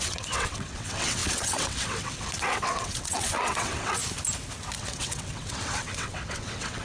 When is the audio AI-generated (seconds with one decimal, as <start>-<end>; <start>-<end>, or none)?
0.0-4.0; 4.8-6.8